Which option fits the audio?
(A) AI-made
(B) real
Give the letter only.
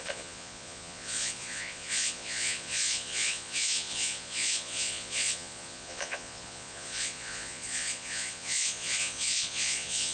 A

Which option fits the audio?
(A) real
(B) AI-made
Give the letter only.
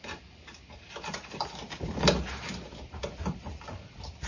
A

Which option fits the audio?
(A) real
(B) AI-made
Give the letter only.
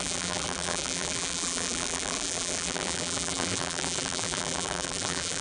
B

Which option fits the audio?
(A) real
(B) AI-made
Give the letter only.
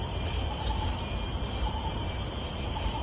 B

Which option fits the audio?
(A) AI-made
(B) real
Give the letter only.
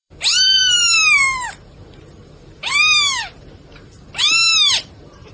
A